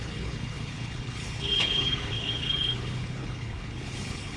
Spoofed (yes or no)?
yes